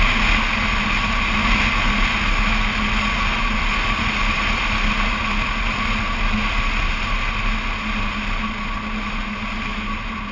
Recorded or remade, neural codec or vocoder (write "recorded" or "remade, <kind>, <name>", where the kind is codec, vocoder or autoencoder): recorded